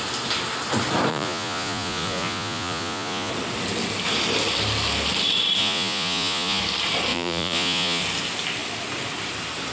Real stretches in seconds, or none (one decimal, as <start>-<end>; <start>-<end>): 0.0-1.1; 3.3-5.6; 6.6-7.1; 8.0-9.7